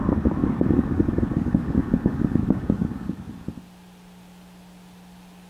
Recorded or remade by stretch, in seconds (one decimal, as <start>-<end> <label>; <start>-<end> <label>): 0.0-0.4 recorded; 0.4-3.3 remade; 3.3-5.5 recorded